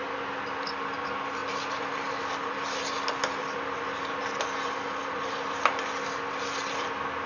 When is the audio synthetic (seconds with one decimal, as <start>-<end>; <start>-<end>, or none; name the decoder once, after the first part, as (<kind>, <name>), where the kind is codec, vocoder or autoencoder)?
none